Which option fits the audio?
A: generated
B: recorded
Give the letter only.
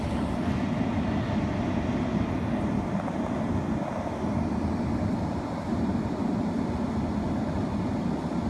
B